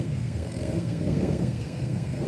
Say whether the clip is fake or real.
fake